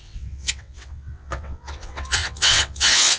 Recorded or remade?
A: remade